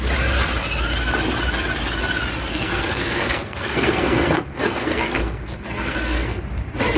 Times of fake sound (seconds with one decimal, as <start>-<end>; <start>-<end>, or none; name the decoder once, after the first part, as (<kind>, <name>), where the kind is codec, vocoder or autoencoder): 2.5-6.4 (codec, SNAC)